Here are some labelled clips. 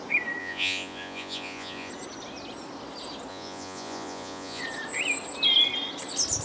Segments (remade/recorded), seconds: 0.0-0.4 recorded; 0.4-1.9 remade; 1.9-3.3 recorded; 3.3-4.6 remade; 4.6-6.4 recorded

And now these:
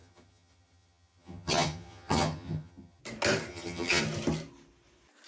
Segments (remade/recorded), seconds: 0.0-3.0 remade; 3.0-3.5 recorded; 3.5-4.0 remade; 4.0-5.3 recorded

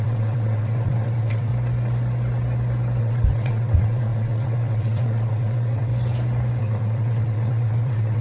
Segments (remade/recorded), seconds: 0.0-1.5 remade; 1.5-3.0 recorded; 3.0-5.9 remade; 5.9-6.6 recorded; 6.6-8.2 remade

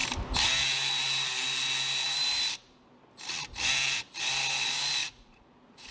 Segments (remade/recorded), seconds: 0.0-5.0 recorded; 5.0-5.9 remade

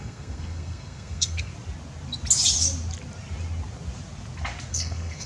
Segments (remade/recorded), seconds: 0.0-1.5 remade; 1.5-4.7 recorded; 4.7-5.3 remade

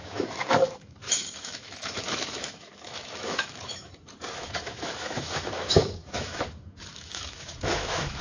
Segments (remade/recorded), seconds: 0.0-3.9 remade; 3.9-4.4 recorded; 4.4-8.2 remade

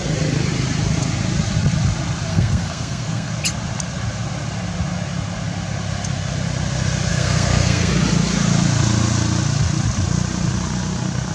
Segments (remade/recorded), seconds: 0.0-2.3 recorded; 2.3-3.3 remade; 3.3-7.1 recorded; 7.1-7.9 remade; 7.9-11.3 recorded